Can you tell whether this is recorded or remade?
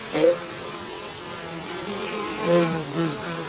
remade